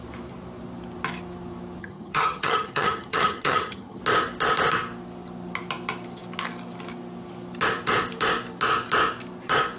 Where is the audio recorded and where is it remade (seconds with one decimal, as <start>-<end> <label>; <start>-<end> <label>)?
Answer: 0.0-1.8 recorded; 1.8-4.0 remade; 4.0-9.8 recorded